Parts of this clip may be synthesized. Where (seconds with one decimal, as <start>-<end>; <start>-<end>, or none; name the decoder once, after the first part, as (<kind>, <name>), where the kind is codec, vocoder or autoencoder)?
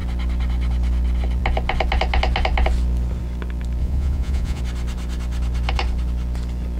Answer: 3.8-4.6 (vocoder, Vocos)